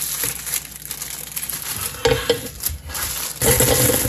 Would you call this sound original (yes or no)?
yes